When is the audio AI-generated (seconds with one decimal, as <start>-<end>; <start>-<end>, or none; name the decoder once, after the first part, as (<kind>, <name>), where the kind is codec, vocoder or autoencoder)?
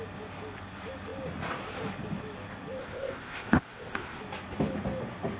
2.8-4.2 (codec, ZipCodec)